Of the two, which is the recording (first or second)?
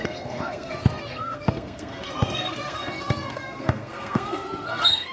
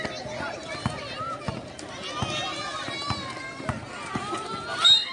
second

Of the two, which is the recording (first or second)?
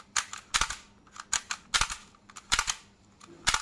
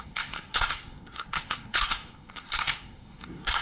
first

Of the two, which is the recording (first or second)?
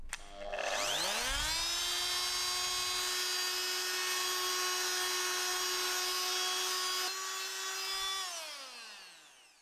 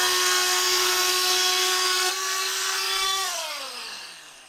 first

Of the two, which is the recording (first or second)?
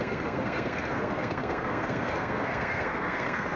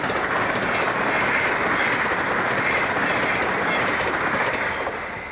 second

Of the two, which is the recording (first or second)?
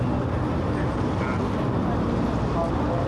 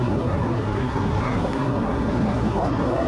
first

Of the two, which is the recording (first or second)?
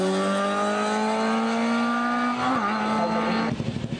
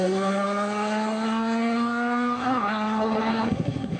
first